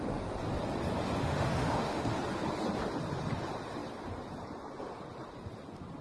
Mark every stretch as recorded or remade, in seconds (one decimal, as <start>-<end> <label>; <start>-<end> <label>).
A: 0.0-1.2 recorded; 1.2-2.1 remade; 2.1-6.0 recorded